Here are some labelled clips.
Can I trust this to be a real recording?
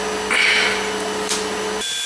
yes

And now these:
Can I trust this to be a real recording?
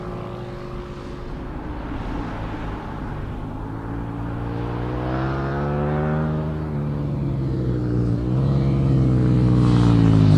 yes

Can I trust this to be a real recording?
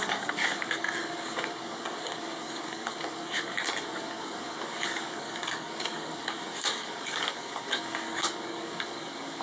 no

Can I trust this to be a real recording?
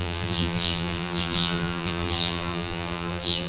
no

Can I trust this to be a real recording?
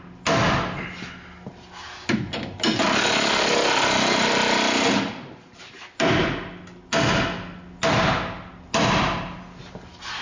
yes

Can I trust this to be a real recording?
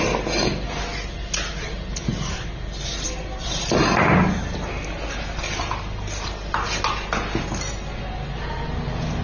yes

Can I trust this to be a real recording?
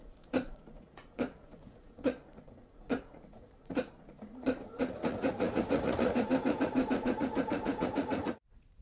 no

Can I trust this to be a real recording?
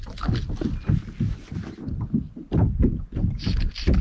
yes